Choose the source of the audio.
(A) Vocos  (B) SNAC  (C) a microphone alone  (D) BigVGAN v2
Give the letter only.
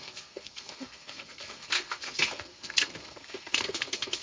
B